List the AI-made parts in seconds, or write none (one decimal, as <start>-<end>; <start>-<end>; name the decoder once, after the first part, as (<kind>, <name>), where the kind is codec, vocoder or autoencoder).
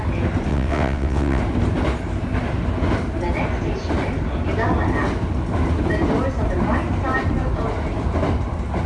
0.5-1.4 (vocoder, WaveNeXt)